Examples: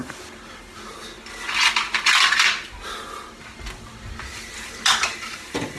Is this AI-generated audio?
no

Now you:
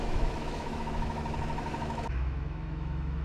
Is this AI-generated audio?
yes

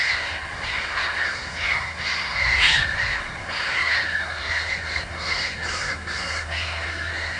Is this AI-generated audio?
yes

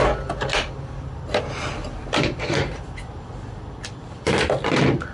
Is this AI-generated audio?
no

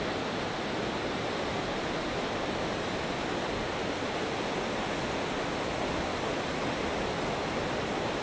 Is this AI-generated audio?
no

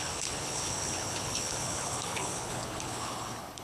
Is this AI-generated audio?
yes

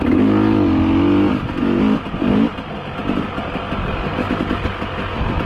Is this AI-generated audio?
no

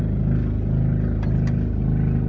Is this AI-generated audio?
no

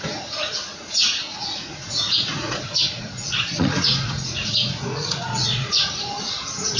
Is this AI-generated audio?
yes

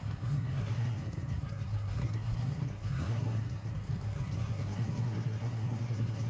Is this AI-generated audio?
yes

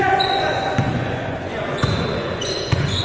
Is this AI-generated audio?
yes